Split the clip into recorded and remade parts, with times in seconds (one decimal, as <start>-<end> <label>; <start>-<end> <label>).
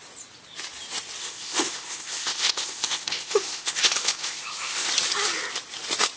0.0-1.2 recorded; 1.2-4.9 remade; 4.9-6.2 recorded